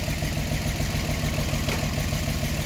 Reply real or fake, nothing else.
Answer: real